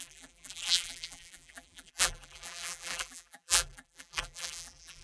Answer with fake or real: fake